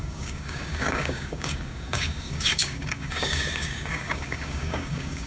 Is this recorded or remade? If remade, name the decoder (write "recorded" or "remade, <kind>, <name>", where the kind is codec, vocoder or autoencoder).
remade, codec, DAC